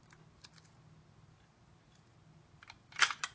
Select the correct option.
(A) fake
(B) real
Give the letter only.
B